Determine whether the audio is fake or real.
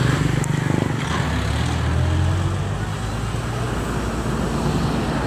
real